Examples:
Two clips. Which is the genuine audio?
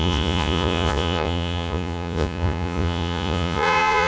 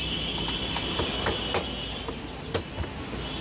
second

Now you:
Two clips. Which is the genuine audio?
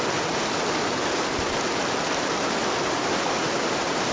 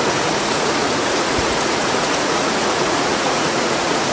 first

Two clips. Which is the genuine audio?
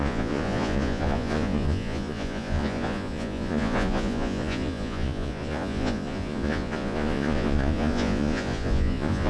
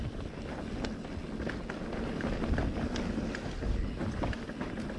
second